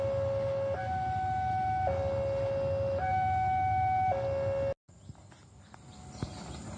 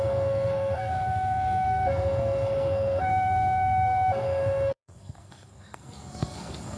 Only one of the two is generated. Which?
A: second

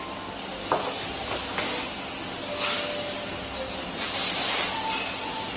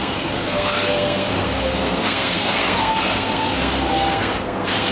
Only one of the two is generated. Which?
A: second